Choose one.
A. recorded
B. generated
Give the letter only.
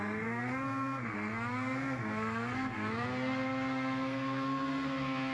B